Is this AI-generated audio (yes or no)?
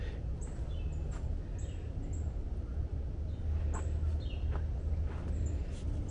no